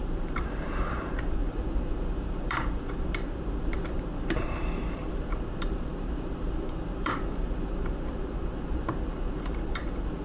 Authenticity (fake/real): fake